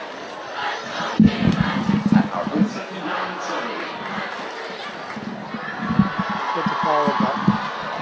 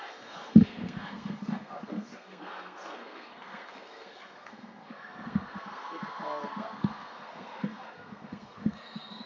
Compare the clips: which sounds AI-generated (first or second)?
second